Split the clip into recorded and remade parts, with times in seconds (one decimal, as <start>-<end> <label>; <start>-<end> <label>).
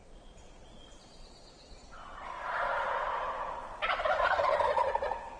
0.0-3.6 remade; 3.6-4.2 recorded; 4.2-5.4 remade